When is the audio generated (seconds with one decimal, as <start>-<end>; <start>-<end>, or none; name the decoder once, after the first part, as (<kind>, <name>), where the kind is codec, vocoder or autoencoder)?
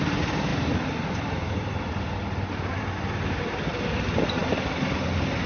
none